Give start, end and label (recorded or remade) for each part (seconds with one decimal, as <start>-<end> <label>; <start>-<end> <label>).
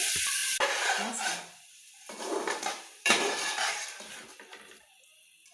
0.0-0.4 recorded; 0.4-3.7 remade; 3.7-5.5 recorded